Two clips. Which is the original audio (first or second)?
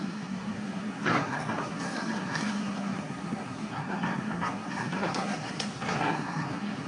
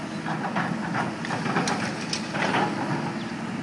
second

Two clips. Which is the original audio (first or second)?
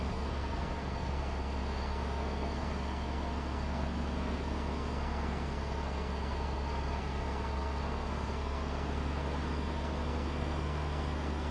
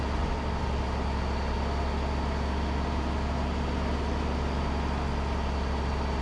second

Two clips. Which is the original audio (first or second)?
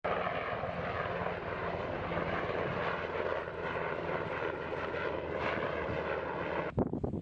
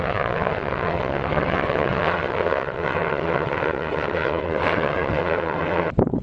first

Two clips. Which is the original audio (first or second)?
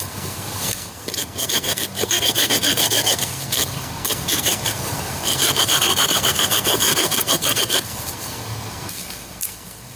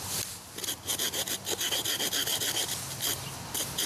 second